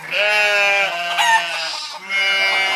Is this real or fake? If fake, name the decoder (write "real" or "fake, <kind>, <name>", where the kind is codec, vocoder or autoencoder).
real